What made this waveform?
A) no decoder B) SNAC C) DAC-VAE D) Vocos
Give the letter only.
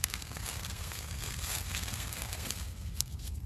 B